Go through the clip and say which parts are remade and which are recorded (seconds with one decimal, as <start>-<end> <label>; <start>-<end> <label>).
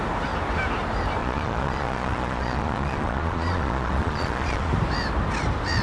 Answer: 0.0-1.2 recorded; 1.2-4.7 remade; 4.7-5.8 recorded